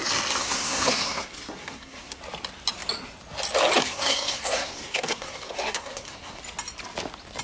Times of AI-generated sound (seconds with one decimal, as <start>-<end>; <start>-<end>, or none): 0.4-2.2; 3.8-6.4